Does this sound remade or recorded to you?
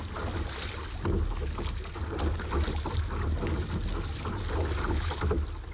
recorded